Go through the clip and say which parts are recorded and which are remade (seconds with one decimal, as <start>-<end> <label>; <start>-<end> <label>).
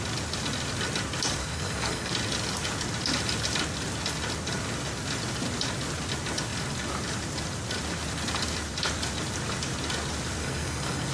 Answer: 0.0-1.4 recorded; 1.4-2.1 remade; 2.1-10.4 recorded; 10.4-11.1 remade